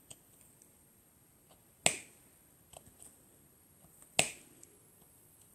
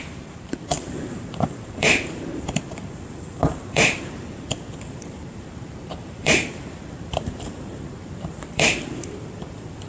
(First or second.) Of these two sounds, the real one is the first